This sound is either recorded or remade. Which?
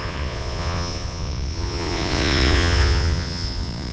remade